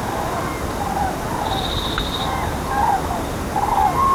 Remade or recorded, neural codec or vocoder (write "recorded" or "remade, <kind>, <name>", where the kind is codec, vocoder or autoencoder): recorded